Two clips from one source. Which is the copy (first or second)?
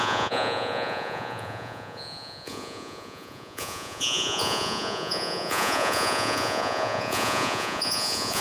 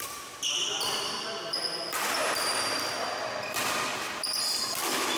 first